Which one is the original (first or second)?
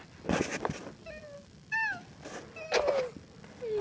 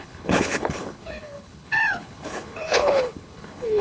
first